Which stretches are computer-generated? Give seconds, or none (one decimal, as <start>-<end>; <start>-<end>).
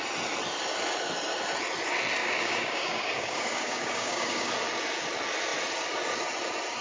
2.2-4.5